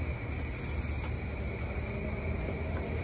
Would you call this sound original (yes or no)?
yes